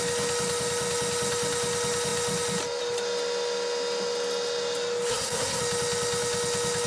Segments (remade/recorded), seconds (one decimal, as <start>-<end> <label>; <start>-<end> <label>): 0.0-5.1 recorded; 5.1-5.6 remade; 5.6-6.9 recorded